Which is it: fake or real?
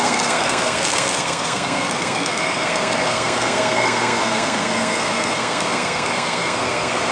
fake